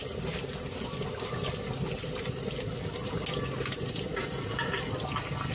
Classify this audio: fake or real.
real